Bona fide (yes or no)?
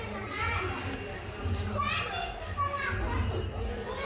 yes